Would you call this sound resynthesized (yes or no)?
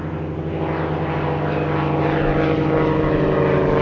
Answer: no